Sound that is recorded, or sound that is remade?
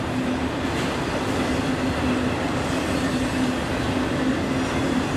recorded